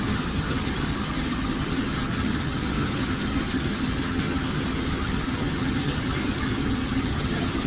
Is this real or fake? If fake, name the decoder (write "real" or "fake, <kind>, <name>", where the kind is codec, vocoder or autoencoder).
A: fake, vocoder, HiFi-GAN